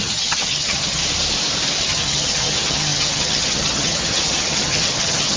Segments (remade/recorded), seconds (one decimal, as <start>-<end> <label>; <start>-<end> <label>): 0.0-1.0 remade; 1.0-1.8 recorded; 1.8-5.4 remade